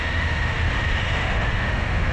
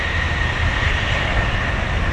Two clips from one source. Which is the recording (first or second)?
second